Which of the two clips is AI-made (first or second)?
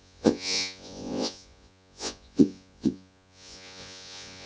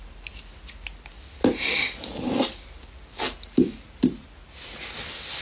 first